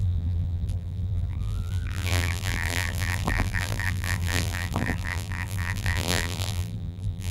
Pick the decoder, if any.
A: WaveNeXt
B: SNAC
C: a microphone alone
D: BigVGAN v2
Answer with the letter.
D